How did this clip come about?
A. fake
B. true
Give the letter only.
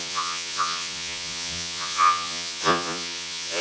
A